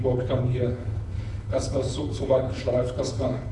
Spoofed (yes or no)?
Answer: yes